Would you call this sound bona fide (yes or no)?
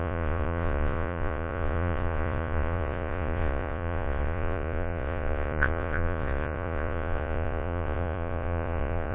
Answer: no